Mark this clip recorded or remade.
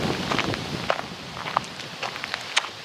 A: recorded